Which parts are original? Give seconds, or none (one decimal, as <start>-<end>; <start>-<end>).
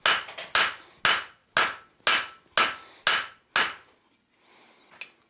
0.0-5.3